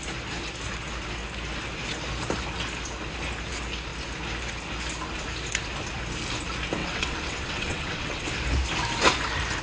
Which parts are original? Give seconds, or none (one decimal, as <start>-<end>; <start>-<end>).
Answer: 0.0-6.8; 8.3-9.6